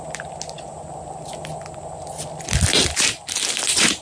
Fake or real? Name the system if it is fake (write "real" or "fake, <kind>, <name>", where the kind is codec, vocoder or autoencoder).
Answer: real